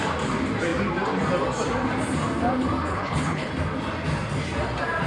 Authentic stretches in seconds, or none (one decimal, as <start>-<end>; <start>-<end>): 0.0-2.9; 3.5-5.1